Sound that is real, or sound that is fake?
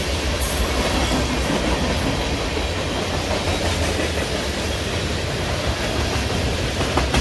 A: real